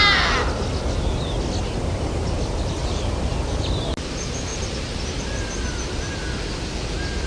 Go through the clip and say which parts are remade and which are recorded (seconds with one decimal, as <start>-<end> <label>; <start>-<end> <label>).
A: 0.0-2.8 recorded; 2.8-3.7 remade; 3.7-4.5 recorded; 4.5-5.2 remade; 5.2-7.3 recorded